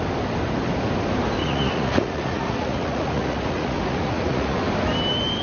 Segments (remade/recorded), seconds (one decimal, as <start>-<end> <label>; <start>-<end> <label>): 0.0-1.4 recorded; 1.4-4.6 remade; 4.6-5.4 recorded